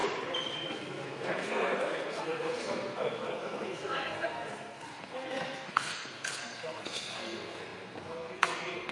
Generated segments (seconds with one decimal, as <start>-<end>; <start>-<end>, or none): 0.7-8.9